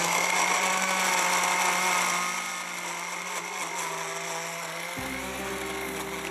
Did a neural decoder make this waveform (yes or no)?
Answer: no